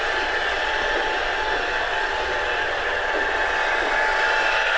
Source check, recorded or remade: recorded